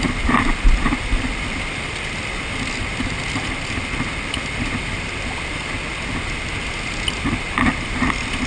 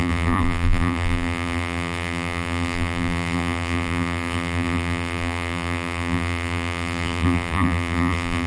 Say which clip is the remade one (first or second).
second